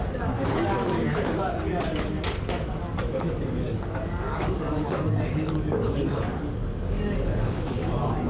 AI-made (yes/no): yes